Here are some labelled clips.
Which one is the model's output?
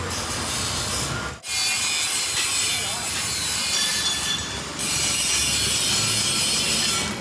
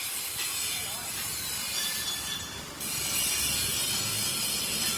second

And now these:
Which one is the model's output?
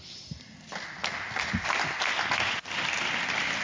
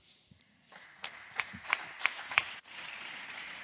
second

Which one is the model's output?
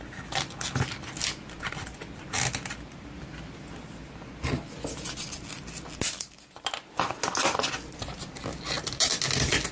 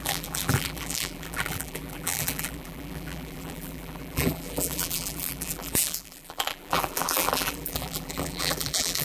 second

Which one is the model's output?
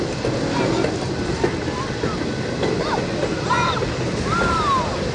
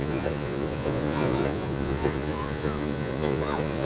second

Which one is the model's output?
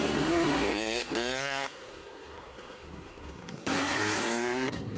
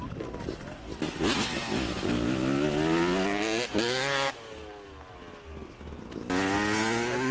first